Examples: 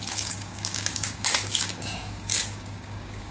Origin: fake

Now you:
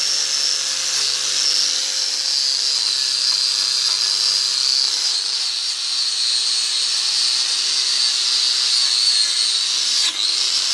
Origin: real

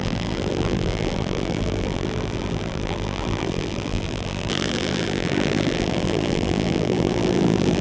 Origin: fake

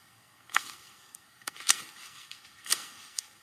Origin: fake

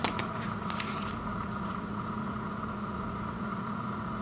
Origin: fake